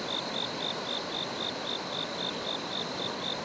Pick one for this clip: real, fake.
real